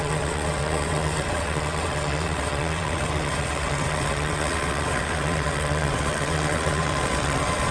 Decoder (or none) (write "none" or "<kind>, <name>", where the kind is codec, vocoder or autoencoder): vocoder, WaveNeXt